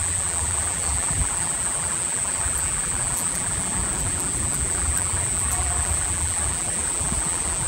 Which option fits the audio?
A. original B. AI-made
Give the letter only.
B